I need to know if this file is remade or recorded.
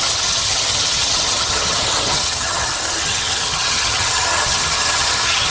remade